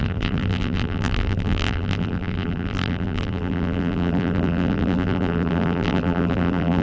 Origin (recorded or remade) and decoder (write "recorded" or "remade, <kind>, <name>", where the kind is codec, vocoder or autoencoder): remade, vocoder, BigVGAN v2